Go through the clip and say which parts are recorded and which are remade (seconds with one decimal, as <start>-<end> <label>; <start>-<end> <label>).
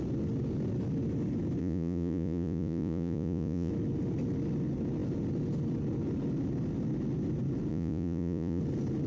0.0-1.6 recorded; 1.6-3.7 remade; 3.7-7.7 recorded; 7.7-8.6 remade; 8.6-9.1 recorded